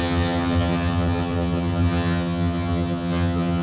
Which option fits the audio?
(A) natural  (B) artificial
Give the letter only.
B